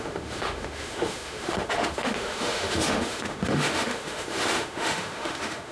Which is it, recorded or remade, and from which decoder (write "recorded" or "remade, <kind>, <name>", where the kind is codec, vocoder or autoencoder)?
remade, autoencoder, DAC-VAE